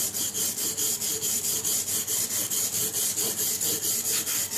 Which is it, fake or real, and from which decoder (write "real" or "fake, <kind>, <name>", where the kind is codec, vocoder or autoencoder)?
real